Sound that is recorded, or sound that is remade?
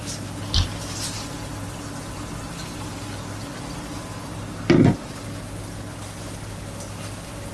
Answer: recorded